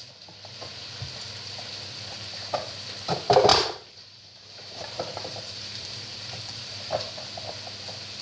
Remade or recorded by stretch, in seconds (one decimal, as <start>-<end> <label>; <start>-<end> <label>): 0.0-3.5 recorded; 3.5-7.1 remade; 7.1-8.2 recorded